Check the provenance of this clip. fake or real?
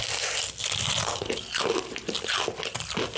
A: real